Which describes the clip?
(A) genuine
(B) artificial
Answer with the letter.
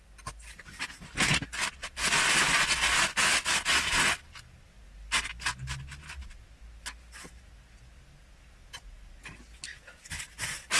A